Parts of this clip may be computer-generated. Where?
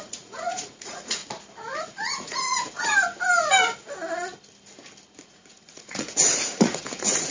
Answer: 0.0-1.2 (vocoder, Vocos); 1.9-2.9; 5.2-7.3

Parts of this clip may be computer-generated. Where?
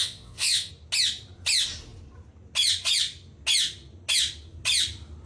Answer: 0.0-0.7 (vocoder, WaveNeXt)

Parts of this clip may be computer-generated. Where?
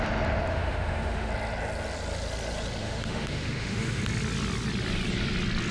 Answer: 0.5-1.3 (autoencoder, DAC-VAE); 2.8-4.0